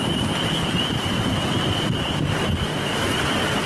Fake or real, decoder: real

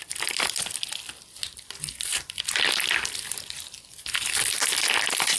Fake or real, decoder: real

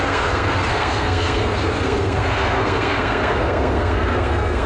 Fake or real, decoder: fake, codec, SNAC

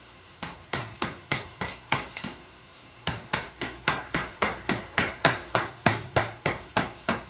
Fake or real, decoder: fake, codec, SNAC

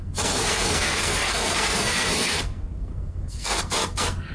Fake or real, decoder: fake, codec, SNAC